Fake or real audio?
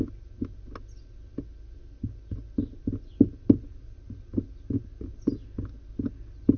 real